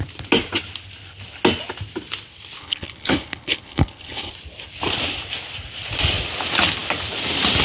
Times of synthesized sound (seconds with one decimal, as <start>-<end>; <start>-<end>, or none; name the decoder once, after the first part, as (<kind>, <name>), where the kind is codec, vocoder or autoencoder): 2.6-4.3 (codec, HILCodec)